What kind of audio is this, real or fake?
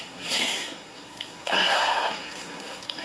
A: fake